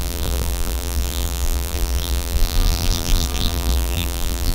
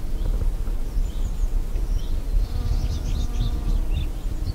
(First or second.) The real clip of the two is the second